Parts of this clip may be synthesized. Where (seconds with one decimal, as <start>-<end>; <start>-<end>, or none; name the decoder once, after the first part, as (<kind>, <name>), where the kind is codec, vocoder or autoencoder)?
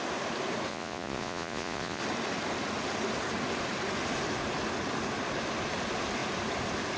0.7-2.0 (vocoder, Vocos)